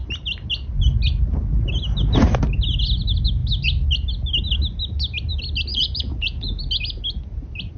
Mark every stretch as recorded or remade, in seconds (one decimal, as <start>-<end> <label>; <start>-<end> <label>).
0.0-5.7 recorded; 5.7-6.6 remade; 6.6-7.8 recorded